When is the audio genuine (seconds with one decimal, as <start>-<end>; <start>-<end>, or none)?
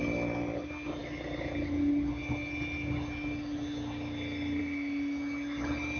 0.0-6.0